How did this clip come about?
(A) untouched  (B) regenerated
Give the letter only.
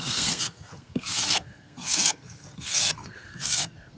B